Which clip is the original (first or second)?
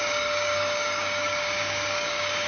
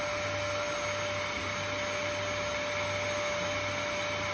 second